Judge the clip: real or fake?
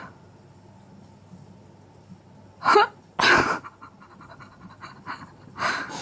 real